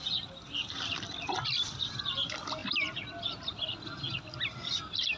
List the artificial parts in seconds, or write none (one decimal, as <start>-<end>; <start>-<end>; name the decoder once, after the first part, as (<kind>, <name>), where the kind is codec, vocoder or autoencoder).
none

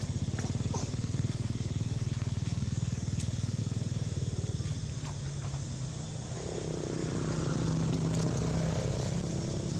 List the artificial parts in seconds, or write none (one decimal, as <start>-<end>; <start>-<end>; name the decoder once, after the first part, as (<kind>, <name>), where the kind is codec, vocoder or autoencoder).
0.8-3.6 (codec, SNAC)

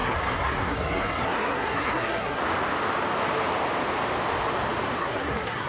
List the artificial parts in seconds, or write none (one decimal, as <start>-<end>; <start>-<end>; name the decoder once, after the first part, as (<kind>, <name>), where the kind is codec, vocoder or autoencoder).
0.0-2.4 (codec, SNAC); 5.0-5.7

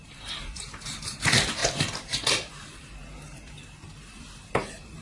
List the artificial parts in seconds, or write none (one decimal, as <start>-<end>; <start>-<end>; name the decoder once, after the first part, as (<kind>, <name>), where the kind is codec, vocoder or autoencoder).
0.0-5.0 (vocoder, BigVGAN v2)